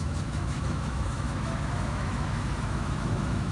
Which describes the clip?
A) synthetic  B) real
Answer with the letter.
A